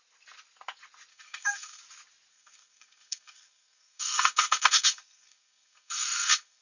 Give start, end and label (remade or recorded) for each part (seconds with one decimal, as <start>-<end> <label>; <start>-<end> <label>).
0.0-1.1 recorded; 1.1-1.8 remade; 1.8-2.3 recorded; 2.3-6.6 remade